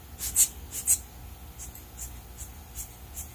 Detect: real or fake real